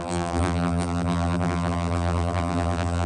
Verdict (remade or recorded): remade